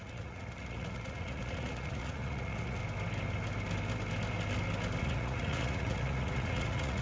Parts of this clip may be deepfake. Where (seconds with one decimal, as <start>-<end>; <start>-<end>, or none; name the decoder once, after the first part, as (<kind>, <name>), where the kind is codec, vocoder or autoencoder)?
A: 0.0-2.8 (vocoder, Vocos); 5.0-7.0